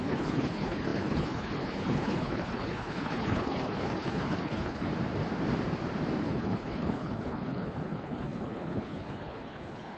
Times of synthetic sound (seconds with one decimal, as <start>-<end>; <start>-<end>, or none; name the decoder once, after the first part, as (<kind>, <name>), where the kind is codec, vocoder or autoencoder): 0.0-4.9 (codec, HILCodec); 6.2-10.0